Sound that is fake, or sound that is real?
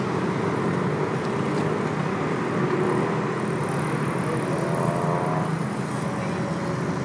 real